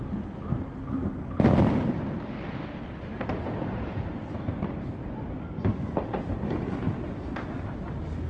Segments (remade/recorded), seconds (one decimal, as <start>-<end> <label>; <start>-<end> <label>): 0.0-8.3 recorded